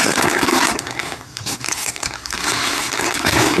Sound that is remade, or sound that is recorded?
remade